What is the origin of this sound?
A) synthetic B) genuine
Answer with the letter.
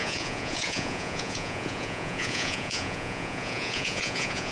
A